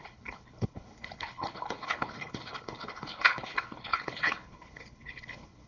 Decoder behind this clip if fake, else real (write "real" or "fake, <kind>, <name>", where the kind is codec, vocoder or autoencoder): fake, codec, HILCodec